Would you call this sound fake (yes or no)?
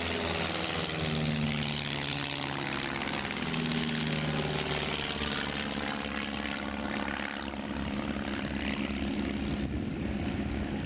no